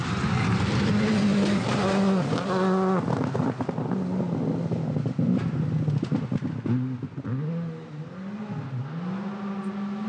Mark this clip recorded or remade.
recorded